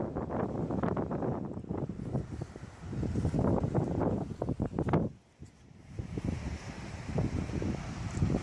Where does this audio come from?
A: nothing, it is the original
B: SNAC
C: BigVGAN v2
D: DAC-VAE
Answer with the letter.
A